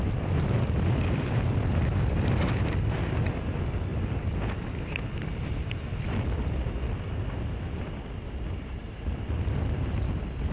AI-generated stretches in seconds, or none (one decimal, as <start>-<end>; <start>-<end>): none